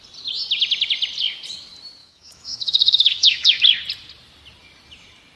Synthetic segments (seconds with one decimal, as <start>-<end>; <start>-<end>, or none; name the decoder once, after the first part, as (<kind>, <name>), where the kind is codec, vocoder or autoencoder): 2.0-3.6 (autoencoder, DAC-VAE)